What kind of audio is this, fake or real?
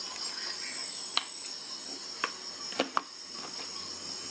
real